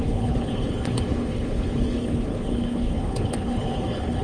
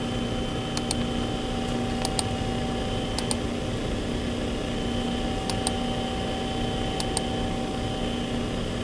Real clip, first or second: second